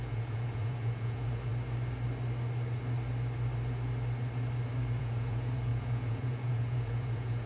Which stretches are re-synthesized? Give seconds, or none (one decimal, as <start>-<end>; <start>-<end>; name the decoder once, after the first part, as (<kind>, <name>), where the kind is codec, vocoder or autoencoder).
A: 0.0-1.5 (vocoder, Vocos); 5.0-7.5